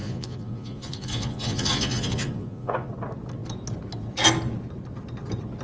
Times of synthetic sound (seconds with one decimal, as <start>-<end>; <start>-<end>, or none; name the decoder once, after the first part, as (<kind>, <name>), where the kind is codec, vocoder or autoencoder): 0.0-2.9 (vocoder, Vocos)